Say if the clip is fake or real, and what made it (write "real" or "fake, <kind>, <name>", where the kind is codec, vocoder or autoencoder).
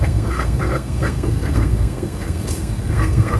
fake, codec, SNAC